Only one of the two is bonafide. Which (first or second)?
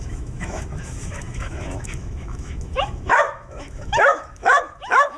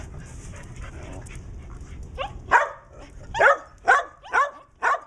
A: second